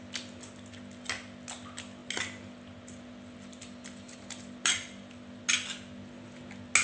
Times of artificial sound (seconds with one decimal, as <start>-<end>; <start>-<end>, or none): 3.6-5.4